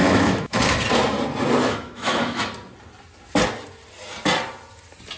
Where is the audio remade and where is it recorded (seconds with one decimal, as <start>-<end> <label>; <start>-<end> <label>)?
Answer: 0.0-0.6 remade; 0.6-1.6 recorded; 1.6-2.4 remade; 2.4-5.2 recorded